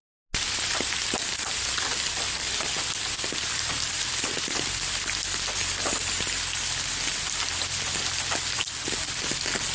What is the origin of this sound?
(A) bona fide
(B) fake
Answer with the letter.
A